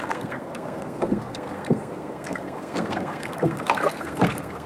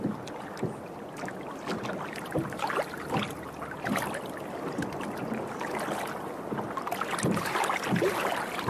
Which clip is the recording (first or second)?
second